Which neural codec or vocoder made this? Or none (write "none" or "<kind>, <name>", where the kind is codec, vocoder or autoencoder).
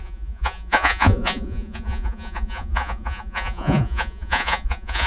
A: vocoder, Vocos